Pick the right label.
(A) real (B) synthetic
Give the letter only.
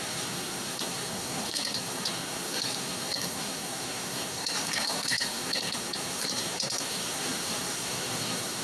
B